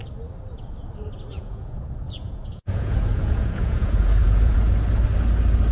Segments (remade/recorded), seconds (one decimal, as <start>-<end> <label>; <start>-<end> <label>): 0.0-1.3 recorded; 1.3-4.6 remade; 4.6-5.7 recorded